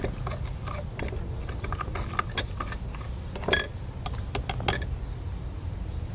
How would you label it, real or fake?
real